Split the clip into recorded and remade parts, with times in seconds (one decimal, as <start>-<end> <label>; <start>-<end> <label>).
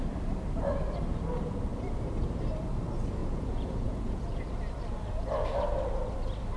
0.0-3.2 recorded; 3.2-4.2 remade; 4.2-6.6 recorded